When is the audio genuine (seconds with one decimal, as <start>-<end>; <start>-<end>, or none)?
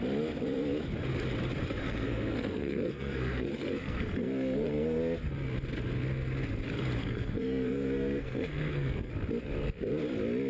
0.0-1.8; 5.0-7.0; 9.1-10.5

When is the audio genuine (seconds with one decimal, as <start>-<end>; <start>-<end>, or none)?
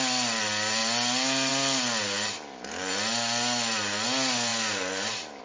0.0-5.4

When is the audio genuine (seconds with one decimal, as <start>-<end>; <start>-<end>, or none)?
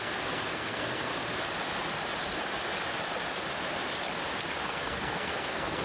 1.1-4.6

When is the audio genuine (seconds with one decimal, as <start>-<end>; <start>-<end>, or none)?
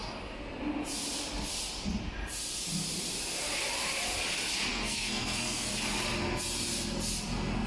0.0-4.7; 5.7-7.7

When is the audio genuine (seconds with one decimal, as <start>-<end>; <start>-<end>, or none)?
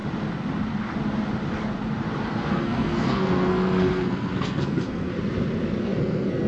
0.0-2.5; 5.1-5.8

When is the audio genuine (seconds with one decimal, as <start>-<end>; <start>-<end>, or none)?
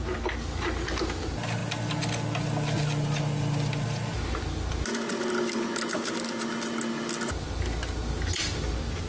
0.0-9.1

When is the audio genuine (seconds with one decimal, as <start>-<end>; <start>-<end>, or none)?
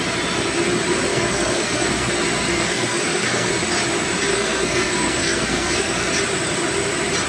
0.0-1.1; 2.1-2.5; 3.5-4.3; 6.1-7.3